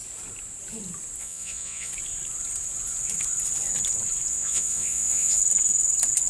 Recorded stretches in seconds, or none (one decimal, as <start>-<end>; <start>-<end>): 0.0-1.2; 1.9-4.3; 5.4-6.3